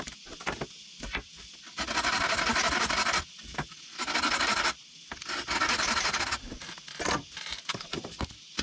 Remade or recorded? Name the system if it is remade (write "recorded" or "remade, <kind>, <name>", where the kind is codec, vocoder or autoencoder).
recorded